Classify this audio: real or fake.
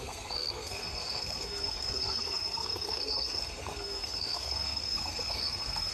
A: fake